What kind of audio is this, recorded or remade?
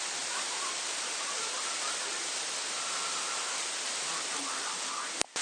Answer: recorded